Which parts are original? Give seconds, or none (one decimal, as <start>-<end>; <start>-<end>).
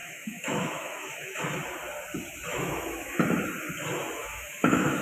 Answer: 1.4-2.5; 3.2-4.2